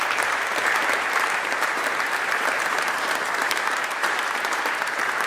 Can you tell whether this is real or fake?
fake